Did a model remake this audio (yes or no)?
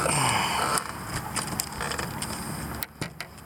no